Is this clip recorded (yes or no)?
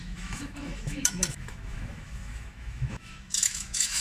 no